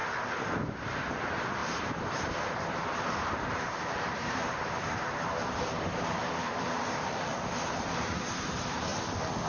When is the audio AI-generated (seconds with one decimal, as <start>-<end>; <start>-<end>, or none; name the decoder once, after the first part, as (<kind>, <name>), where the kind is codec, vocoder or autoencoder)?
0.6-8.9 (vocoder, BigVGAN v2)

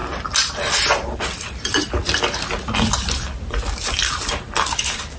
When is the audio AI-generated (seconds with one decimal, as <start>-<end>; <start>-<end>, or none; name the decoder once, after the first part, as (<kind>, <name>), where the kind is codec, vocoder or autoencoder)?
0.5-2.1 (vocoder, BigVGAN v2); 3.9-5.2

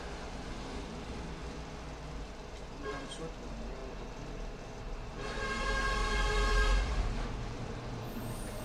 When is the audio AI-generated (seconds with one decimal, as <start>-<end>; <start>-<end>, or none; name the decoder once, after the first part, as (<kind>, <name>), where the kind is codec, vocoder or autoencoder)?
0.0-0.9 (vocoder, BigVGAN v2); 2.1-3.8; 4.8-8.6